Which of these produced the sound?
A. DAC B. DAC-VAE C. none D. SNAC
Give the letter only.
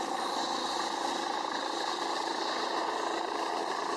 C